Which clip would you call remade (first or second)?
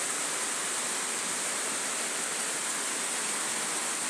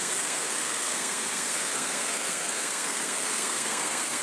second